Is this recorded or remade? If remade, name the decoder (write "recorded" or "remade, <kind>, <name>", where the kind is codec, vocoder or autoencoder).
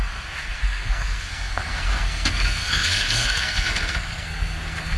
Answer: remade, codec, SNAC